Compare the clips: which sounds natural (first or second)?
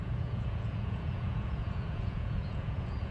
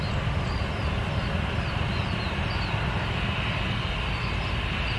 second